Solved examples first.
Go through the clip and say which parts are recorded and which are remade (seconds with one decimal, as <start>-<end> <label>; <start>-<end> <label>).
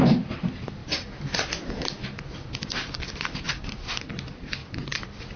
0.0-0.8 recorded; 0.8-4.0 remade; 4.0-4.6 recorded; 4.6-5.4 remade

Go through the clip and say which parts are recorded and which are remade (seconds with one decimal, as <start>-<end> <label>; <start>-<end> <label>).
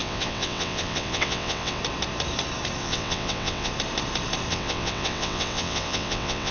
0.0-1.8 remade; 1.8-2.8 recorded; 2.8-3.7 remade; 3.7-4.5 recorded; 4.5-6.5 remade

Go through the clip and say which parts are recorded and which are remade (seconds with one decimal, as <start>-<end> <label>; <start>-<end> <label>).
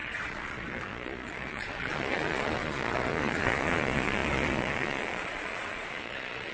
0.0-6.5 remade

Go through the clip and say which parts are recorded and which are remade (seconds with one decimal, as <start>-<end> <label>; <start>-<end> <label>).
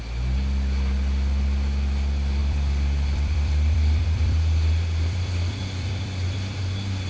0.0-2.4 recorded; 2.4-6.6 remade; 6.6-7.1 recorded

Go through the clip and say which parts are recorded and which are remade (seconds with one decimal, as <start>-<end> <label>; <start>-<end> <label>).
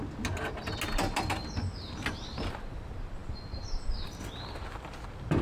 0.0-5.4 recorded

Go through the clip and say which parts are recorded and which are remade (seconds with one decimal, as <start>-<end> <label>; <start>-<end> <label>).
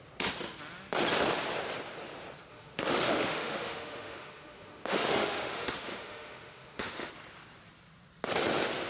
0.0-2.5 recorded; 2.5-7.1 remade; 7.1-8.9 recorded